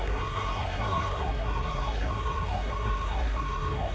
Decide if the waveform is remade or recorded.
remade